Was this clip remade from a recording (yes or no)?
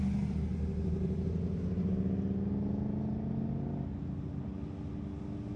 no